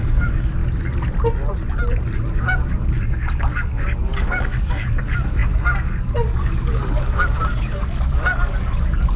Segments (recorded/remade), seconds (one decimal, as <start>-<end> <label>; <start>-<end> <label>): 0.0-0.6 remade; 0.6-2.4 recorded; 2.4-9.2 remade